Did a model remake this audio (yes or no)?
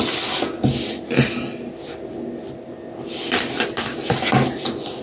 no